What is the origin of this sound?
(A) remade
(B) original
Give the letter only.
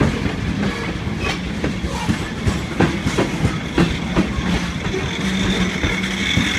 B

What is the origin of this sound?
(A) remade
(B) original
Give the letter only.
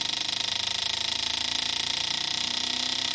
B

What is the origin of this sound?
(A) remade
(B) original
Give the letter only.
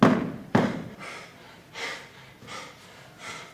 B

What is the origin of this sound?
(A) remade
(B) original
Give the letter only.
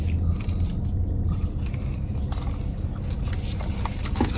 B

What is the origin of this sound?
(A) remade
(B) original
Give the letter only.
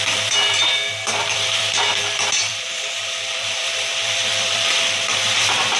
A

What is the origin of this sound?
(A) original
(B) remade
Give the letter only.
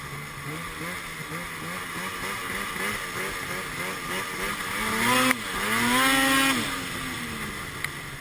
A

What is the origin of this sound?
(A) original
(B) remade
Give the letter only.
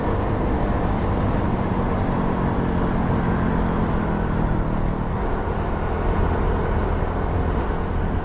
A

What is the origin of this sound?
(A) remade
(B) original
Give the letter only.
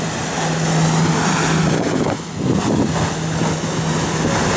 B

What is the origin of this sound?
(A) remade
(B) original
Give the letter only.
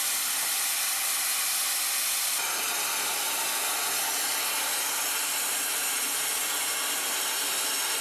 B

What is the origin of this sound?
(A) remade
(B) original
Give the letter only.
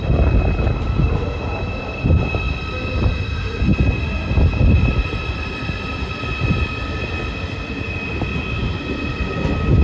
B